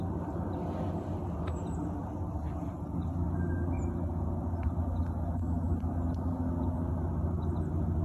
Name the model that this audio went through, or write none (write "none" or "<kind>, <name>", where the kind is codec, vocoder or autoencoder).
none